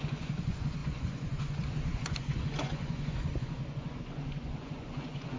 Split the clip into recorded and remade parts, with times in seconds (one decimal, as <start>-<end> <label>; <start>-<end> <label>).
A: 0.0-5.4 remade

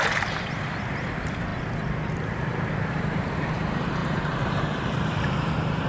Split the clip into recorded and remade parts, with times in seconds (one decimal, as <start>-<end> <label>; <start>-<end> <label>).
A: 0.0-1.5 remade; 1.5-2.3 recorded; 2.3-5.9 remade

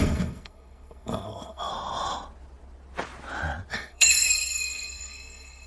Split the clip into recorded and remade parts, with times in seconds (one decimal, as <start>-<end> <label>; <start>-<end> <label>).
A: 0.0-1.7 remade; 1.7-3.7 recorded; 3.7-5.7 remade

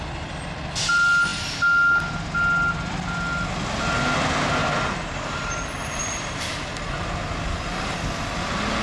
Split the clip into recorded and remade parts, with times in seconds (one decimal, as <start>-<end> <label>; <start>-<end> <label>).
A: 0.0-4.6 recorded; 4.6-6.5 remade; 6.5-8.8 recorded

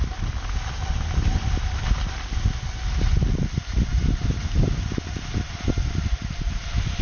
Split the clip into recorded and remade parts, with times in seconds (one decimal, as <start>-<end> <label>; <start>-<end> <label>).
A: 0.0-7.0 recorded

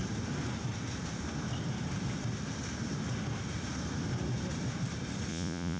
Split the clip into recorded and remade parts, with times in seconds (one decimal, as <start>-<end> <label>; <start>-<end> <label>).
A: 0.0-5.3 recorded; 5.3-5.8 remade

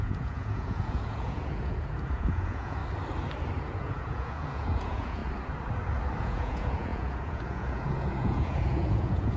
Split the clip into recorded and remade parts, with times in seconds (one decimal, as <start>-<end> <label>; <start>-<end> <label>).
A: 0.0-2.8 remade; 2.8-3.6 recorded; 3.6-5.2 remade; 5.2-6.2 recorded; 6.2-9.4 remade

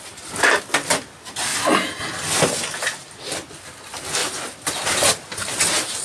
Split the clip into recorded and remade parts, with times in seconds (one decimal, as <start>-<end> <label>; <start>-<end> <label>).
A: 0.0-6.0 recorded